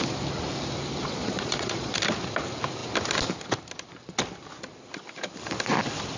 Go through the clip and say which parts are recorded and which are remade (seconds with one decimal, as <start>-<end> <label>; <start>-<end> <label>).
0.0-1.0 recorded; 1.0-2.0 remade; 2.0-6.2 recorded